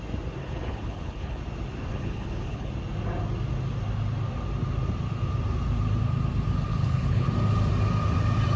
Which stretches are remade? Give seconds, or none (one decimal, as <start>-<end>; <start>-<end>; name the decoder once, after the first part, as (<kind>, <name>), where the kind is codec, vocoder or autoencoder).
0.4-1.4 (codec, HILCodec); 1.9-2.7; 6.7-7.3